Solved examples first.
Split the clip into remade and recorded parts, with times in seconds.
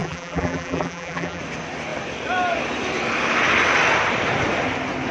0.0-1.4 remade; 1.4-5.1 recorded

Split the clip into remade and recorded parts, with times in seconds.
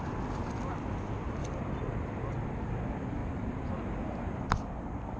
0.0-3.2 recorded; 3.2-4.4 remade; 4.4-5.2 recorded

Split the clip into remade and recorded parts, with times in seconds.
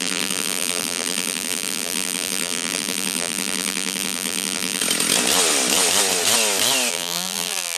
0.0-4.8 remade; 4.8-6.9 recorded; 6.9-7.8 remade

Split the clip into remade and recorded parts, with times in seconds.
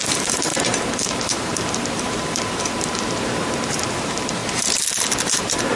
0.0-4.4 remade; 4.4-5.2 recorded; 5.2-5.8 remade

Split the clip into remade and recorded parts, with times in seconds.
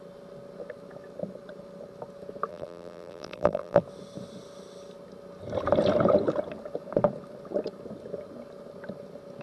0.0-2.5 recorded; 2.5-3.8 remade; 3.8-9.4 recorded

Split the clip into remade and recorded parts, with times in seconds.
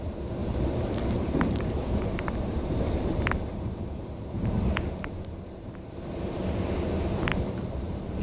0.0-0.4 recorded; 0.4-5.3 remade; 5.3-7.3 recorded; 7.3-8.2 remade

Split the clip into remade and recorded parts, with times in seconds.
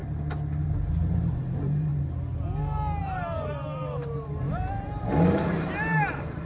0.0-0.9 recorded; 0.9-1.9 remade; 1.9-3.0 recorded; 3.0-6.4 remade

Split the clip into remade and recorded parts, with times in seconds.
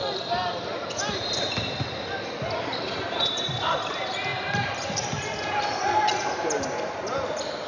0.0-7.7 recorded